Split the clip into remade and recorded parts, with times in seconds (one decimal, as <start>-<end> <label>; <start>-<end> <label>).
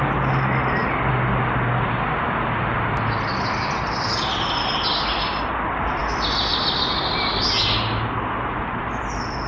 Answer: 0.0-9.5 recorded